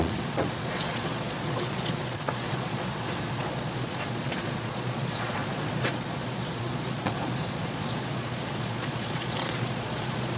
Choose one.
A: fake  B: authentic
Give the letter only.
A